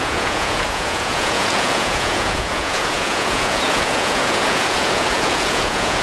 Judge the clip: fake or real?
fake